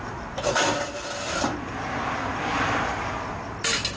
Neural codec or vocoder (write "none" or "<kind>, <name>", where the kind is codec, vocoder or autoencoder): none